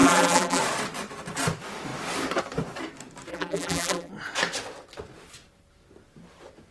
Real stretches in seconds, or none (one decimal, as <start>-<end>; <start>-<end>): 0.6-3.3; 4.1-6.7